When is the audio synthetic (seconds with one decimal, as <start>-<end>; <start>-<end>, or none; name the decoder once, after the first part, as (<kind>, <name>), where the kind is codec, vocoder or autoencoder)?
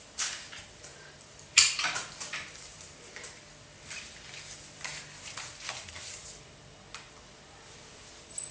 0.9-3.0 (vocoder, BigVGAN v2)